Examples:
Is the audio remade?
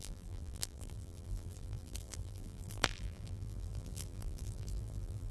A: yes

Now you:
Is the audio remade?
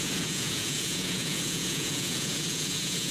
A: yes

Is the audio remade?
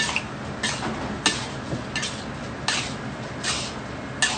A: no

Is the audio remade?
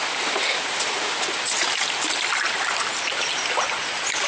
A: no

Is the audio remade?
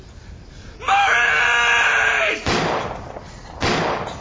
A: no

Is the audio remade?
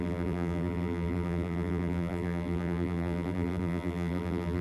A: yes